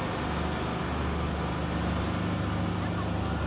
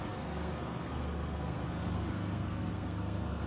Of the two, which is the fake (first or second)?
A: second